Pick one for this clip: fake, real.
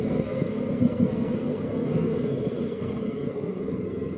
fake